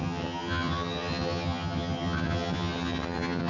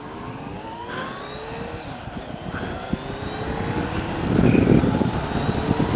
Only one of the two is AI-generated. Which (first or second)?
first